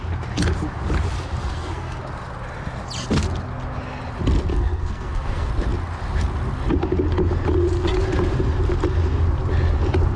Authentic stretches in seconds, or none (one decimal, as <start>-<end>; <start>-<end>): 0.0-1.4; 2.0-4.5; 5.5-10.2